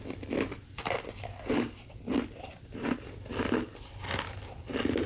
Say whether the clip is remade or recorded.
recorded